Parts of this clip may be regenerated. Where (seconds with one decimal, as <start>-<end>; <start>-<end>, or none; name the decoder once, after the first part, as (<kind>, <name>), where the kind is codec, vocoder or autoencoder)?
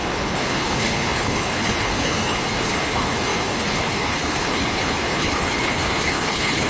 0.0-6.7 (codec, HILCodec)